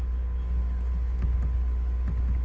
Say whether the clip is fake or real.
real